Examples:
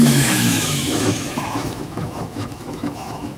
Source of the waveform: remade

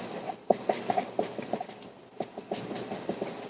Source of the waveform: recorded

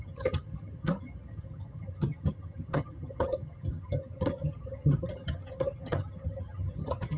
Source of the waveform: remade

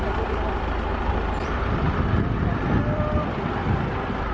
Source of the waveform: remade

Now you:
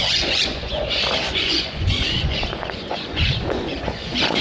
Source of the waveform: remade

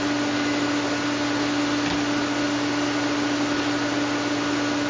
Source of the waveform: recorded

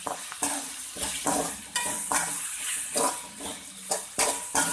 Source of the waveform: remade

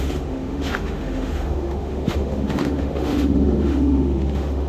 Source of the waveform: remade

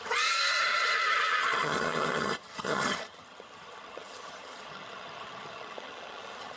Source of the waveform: remade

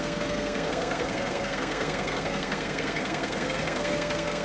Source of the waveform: remade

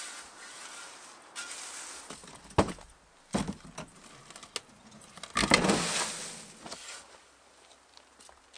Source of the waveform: recorded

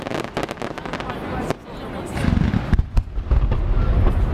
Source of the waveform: recorded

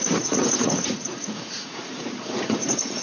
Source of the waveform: remade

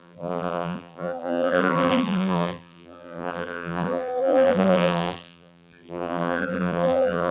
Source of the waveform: remade